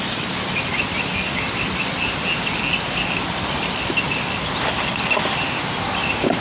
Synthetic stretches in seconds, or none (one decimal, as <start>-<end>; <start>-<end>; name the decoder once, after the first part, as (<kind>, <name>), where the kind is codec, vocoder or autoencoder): none